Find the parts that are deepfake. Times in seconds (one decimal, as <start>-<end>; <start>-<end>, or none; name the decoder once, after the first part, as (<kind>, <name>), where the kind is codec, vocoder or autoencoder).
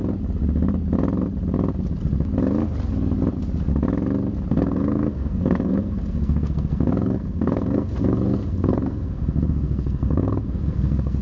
4.5-11.2 (codec, SNAC)